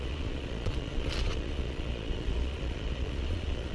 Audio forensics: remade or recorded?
remade